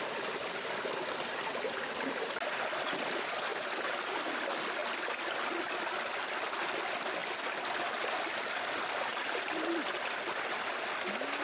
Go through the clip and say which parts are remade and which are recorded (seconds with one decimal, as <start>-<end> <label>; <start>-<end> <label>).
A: 0.0-3.5 recorded; 3.5-4.1 remade; 4.1-9.1 recorded; 9.1-9.8 remade; 9.8-11.4 recorded